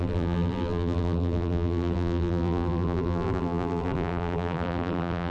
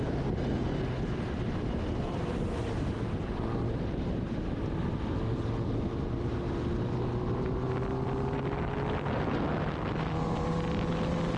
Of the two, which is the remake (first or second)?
first